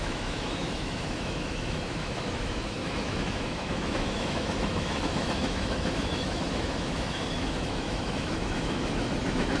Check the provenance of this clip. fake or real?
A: fake